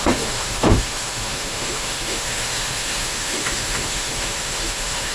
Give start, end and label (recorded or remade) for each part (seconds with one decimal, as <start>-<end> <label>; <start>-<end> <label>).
0.0-5.1 remade